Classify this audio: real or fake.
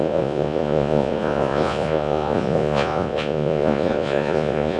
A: fake